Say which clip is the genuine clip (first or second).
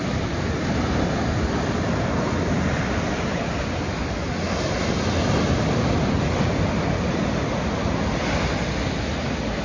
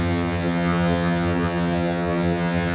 first